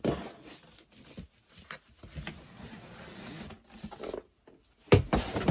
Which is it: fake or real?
real